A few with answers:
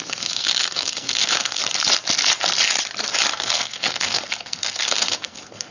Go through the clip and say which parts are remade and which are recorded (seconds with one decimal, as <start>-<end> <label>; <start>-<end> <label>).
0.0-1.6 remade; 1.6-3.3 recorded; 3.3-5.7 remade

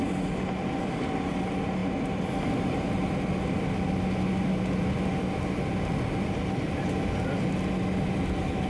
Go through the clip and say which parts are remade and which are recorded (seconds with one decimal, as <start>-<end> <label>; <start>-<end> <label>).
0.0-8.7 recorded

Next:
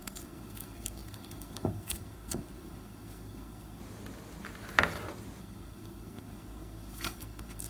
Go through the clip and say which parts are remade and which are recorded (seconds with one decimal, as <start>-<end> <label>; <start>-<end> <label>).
0.0-3.8 remade; 3.8-5.4 recorded; 5.4-7.7 remade

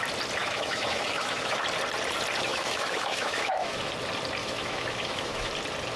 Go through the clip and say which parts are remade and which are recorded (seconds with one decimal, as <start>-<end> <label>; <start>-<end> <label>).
0.0-0.4 recorded; 0.4-1.6 remade; 1.6-2.5 recorded; 2.5-3.9 remade; 3.9-4.4 recorded; 4.4-5.5 remade; 5.5-6.0 recorded

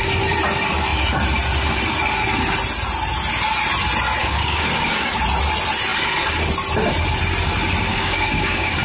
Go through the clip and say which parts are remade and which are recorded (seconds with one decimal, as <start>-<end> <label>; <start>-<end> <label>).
0.0-4.2 recorded; 4.2-5.2 remade; 5.2-7.9 recorded; 7.9-8.8 remade

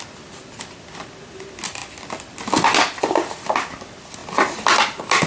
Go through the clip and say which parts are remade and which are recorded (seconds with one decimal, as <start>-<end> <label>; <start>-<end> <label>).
0.0-5.3 recorded